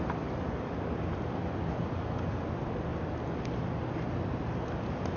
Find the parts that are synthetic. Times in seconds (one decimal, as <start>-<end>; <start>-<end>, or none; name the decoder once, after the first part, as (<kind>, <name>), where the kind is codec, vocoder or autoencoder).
0.0-2.9 (vocoder, BigVGAN v2); 3.5-5.2